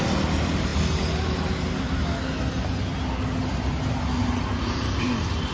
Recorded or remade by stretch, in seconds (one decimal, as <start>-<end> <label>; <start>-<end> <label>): 0.0-5.5 recorded